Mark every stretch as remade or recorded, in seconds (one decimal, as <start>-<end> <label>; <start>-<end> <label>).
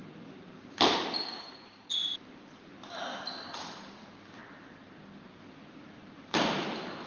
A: 0.0-7.1 remade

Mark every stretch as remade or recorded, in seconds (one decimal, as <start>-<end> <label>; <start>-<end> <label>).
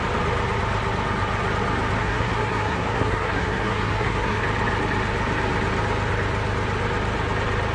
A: 0.0-2.0 recorded; 2.0-4.4 remade; 4.4-7.7 recorded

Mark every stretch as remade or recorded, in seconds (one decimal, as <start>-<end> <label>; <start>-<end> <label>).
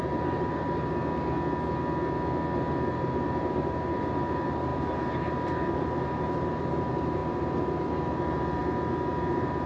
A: 0.0-1.0 remade; 1.0-2.9 recorded; 2.9-9.7 remade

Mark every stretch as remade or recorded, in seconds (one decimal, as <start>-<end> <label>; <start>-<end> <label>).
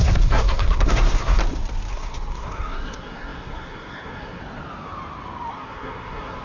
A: 0.0-1.4 remade; 1.4-1.9 recorded; 1.9-4.4 remade; 4.4-5.5 recorded; 5.5-6.4 remade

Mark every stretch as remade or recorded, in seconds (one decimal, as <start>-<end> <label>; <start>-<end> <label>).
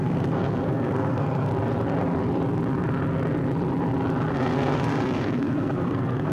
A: 0.0-1.5 remade; 1.5-4.3 recorded; 4.3-6.3 remade